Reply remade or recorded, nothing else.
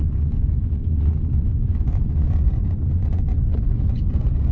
remade